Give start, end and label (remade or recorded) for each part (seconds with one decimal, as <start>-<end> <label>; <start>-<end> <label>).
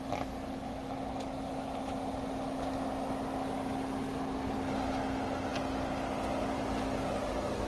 0.0-7.7 recorded